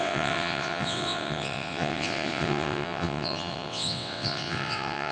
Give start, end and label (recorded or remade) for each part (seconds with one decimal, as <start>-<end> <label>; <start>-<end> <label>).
0.0-5.1 remade